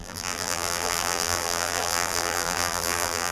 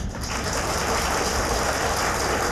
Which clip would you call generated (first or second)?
first